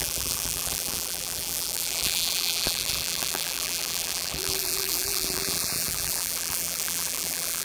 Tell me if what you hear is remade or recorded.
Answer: remade